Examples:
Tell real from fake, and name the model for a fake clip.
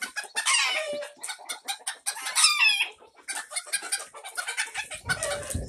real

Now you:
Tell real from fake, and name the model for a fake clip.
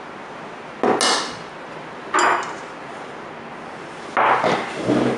real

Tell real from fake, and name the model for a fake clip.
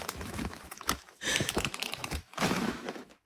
fake, autoencoder, DAC-VAE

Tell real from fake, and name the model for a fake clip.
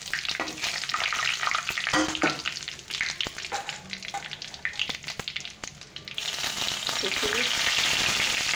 real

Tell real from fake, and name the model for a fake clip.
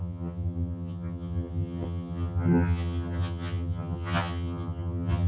fake, vocoder, HiFi-GAN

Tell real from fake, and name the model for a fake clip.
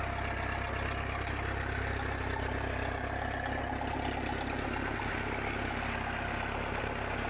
real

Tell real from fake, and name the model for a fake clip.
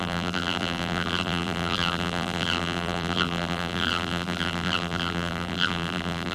fake, vocoder, BigVGAN v2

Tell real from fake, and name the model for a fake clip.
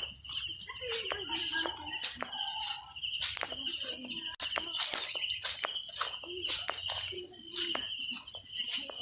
real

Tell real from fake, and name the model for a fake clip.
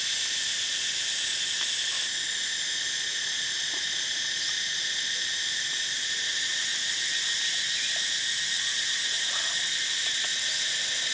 real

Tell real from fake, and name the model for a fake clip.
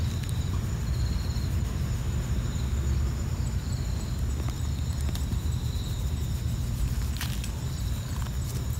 real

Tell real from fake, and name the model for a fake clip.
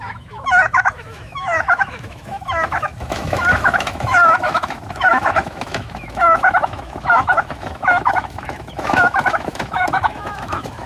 fake, autoencoder, DAC-VAE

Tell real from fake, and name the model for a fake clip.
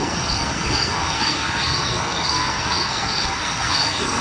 fake, codec, SNAC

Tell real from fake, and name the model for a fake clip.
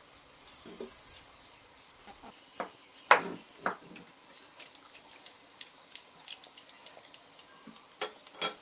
fake, vocoder, BigVGAN v2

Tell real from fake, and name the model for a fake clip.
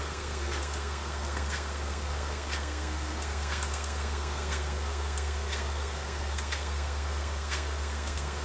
fake, codec, SNAC